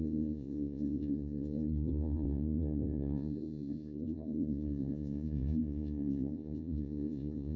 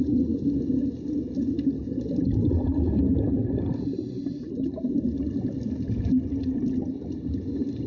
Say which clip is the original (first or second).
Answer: second